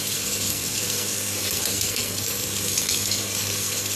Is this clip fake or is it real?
fake